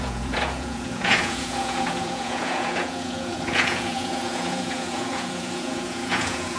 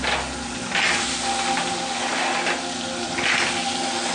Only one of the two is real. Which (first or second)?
second